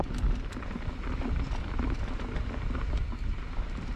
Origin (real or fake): real